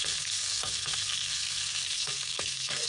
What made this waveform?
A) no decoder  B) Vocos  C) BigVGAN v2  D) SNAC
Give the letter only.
D